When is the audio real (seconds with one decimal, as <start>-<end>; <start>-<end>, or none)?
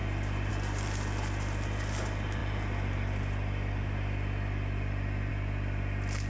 0.0-6.3